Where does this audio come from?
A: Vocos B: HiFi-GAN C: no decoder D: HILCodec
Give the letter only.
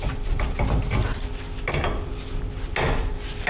C